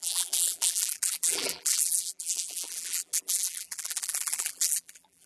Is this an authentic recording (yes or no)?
no